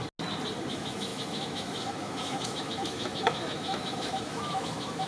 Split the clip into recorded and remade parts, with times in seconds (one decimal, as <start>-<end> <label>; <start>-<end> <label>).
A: 0.0-0.7 recorded; 0.7-5.1 remade